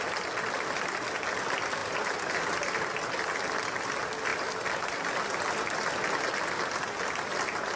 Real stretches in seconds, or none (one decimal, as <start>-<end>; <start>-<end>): 0.0-7.8